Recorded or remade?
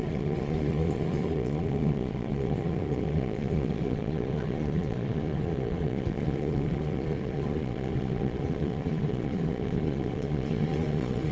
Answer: remade